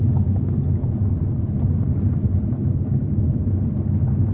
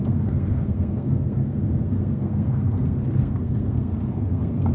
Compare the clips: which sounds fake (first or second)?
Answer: second